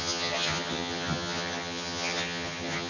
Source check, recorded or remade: remade